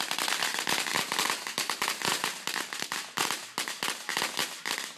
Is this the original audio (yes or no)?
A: yes